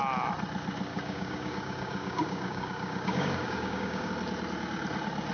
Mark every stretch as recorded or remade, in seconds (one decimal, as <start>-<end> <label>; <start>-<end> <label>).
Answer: 0.0-0.9 recorded; 0.9-4.1 remade; 4.1-5.3 recorded